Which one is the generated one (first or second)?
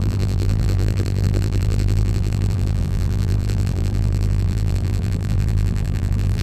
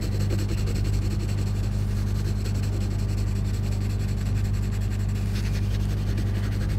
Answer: first